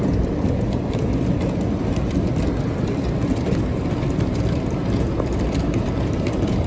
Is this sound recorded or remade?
recorded